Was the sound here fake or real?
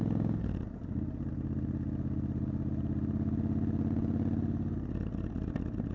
real